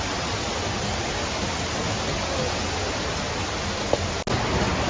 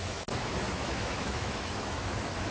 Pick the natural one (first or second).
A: first